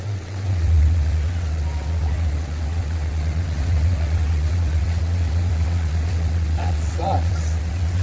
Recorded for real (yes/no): no